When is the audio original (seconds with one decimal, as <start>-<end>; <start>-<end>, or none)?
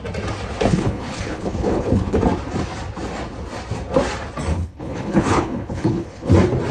0.0-0.7; 2.2-4.5; 6.3-6.7